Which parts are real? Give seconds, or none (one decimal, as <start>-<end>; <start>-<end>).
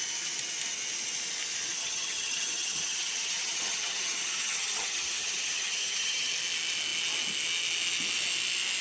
0.0-1.8; 6.3-8.8